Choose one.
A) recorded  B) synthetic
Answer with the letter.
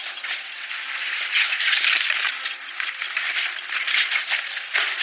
A